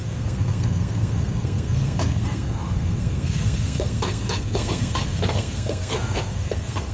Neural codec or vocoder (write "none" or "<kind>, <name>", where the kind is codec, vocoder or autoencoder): codec, SNAC